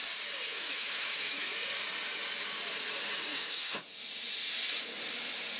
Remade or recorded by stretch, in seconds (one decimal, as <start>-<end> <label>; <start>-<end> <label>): 0.0-0.5 recorded; 0.5-1.6 remade; 1.6-3.3 recorded; 3.3-3.8 remade; 3.8-5.6 recorded